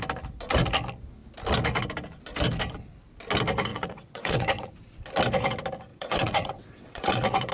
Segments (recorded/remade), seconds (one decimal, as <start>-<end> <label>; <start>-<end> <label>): 0.0-3.7 recorded; 3.7-4.7 remade; 4.7-5.9 recorded; 5.9-7.5 remade